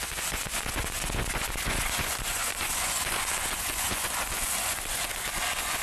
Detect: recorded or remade remade